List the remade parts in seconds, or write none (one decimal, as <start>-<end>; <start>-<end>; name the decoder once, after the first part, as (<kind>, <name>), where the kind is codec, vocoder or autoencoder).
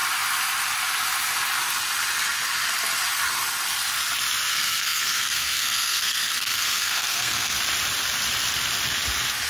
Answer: 4.5-7.6 (codec, SNAC)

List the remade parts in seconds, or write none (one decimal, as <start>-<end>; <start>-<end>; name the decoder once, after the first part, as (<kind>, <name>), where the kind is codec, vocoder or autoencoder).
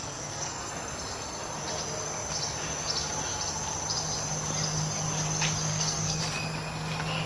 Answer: 0.0-0.7 (codec, SNAC); 5.7-6.2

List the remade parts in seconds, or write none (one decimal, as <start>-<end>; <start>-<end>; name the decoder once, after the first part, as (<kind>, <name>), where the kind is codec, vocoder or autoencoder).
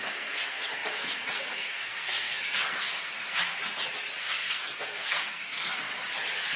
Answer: 0.0-3.6 (codec, SNAC); 4.2-5.9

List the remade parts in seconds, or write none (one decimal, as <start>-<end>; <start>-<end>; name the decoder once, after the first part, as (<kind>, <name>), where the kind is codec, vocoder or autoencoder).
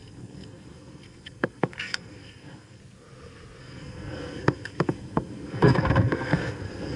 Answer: 0.0-2.8 (codec, SNAC); 3.6-7.0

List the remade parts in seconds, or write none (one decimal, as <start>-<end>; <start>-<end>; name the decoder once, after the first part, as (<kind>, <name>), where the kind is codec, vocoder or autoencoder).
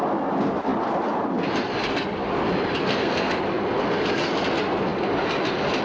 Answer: 2.8-3.4 (codec, SNAC)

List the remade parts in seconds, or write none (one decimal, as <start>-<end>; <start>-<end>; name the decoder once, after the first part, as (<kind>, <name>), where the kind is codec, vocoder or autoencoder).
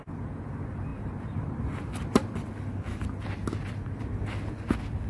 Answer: none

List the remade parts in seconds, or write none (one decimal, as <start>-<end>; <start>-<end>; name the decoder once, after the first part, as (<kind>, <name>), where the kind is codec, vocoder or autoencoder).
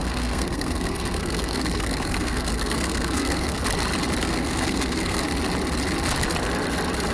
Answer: 0.0-3.6 (codec, SNAC); 4.2-5.2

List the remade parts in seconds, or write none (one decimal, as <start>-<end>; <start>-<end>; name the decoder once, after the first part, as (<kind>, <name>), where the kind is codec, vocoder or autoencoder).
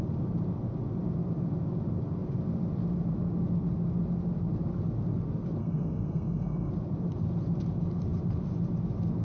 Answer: 5.6-6.7 (codec, SNAC)